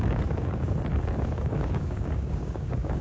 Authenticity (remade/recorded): remade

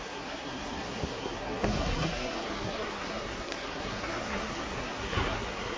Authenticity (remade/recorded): remade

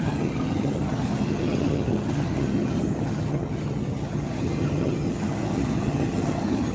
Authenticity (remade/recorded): remade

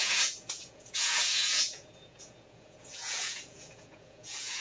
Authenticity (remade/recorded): remade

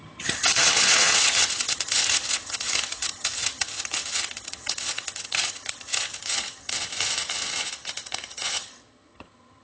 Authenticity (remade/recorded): remade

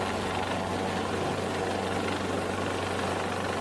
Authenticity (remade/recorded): recorded